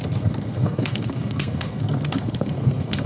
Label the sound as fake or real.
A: fake